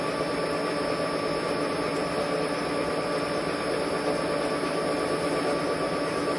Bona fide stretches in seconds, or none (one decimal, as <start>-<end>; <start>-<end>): 0.0-6.4